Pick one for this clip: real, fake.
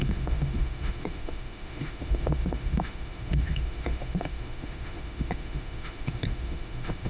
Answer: fake